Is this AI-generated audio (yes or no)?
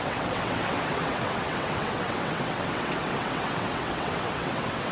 yes